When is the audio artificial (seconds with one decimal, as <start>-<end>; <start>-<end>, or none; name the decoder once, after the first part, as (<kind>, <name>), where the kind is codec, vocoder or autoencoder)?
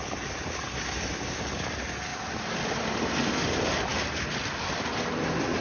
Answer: none